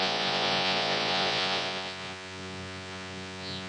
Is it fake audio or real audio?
fake